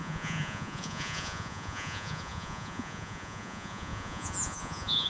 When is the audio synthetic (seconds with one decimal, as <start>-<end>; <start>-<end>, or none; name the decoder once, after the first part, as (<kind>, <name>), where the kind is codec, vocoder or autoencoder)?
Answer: 0.0-5.1 (vocoder, Vocos)